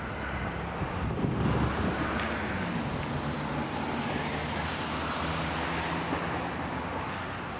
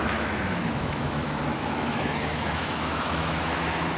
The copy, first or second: second